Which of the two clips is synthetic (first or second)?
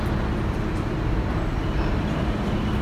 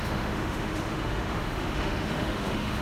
second